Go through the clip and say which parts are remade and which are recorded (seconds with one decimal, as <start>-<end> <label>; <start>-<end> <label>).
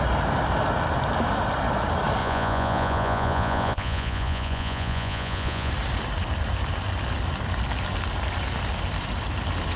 0.0-2.2 recorded; 2.2-5.7 remade; 5.7-9.8 recorded